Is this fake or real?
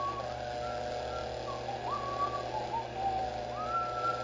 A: real